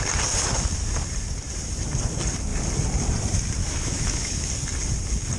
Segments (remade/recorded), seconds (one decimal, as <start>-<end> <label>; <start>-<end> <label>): 0.0-3.6 recorded; 3.6-4.5 remade; 4.5-5.4 recorded